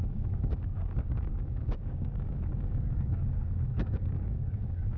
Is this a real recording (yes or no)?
no